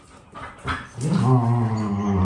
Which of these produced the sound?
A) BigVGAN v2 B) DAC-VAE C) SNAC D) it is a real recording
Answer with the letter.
D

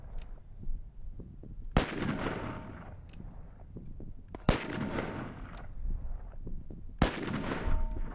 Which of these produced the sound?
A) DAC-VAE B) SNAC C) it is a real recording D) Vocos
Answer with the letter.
C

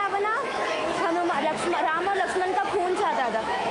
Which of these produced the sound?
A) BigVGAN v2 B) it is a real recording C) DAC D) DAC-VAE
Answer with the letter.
D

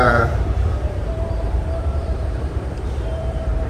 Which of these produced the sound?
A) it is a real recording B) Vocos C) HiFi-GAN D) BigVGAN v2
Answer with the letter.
D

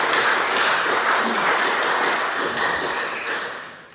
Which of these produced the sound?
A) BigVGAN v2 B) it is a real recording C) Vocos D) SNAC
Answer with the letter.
B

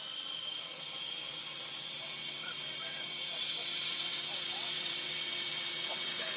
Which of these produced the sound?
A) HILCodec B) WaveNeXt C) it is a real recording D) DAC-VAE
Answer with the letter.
B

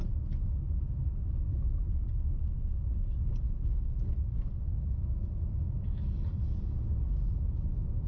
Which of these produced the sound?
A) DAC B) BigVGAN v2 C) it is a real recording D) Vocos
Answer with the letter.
C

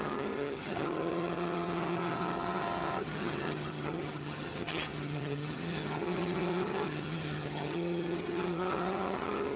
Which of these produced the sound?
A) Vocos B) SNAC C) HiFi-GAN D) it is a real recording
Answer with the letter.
C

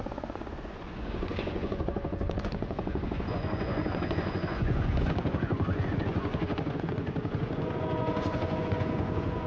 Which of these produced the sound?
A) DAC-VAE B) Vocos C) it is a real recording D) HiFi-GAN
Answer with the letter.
B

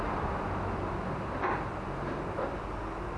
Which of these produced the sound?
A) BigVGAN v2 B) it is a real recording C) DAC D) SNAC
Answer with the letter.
B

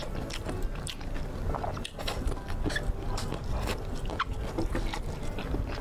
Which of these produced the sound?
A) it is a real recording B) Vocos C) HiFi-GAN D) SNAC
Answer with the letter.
A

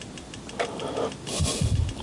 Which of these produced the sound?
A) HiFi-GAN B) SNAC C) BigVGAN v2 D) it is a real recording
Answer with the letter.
D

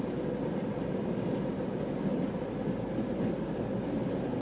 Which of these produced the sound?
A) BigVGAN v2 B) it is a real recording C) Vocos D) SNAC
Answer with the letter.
B